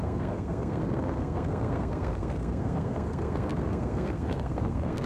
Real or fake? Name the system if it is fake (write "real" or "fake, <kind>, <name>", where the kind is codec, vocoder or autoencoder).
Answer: fake, codec, SNAC